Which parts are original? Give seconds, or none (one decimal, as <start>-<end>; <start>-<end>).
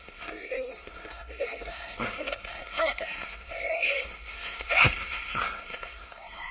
none